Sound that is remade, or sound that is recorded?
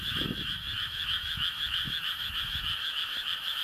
remade